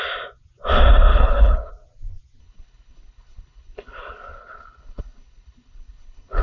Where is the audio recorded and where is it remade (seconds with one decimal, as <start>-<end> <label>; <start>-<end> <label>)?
0.0-1.1 recorded; 1.1-1.7 remade; 1.7-2.4 recorded; 2.4-6.4 remade